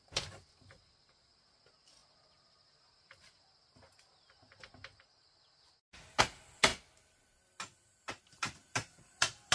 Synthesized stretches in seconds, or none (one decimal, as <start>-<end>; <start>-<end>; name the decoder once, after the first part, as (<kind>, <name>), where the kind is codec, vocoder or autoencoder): none